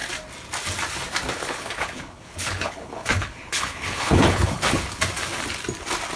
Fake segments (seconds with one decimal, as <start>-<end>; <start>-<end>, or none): 1.3-5.0